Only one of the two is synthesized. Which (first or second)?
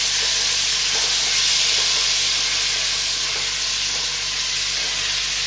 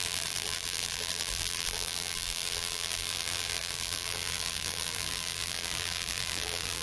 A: second